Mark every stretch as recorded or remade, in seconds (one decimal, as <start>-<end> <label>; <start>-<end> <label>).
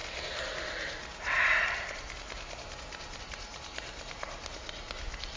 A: 0.0-5.4 recorded